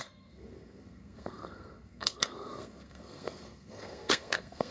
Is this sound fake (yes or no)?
yes